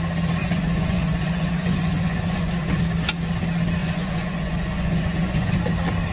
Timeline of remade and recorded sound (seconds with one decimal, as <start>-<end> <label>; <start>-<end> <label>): 0.0-0.4 recorded; 0.4-2.8 remade; 2.8-3.8 recorded; 3.8-5.6 remade; 5.6-6.1 recorded